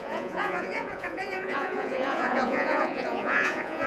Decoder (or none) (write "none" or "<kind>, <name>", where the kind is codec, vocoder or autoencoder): vocoder, Vocos